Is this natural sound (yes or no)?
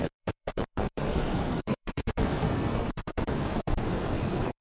no